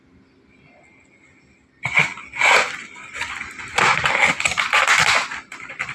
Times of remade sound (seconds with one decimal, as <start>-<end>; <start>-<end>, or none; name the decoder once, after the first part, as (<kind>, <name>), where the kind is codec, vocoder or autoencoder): none